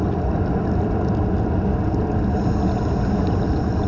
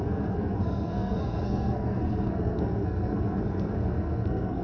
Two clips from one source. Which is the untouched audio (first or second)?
first